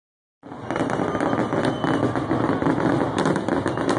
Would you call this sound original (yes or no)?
yes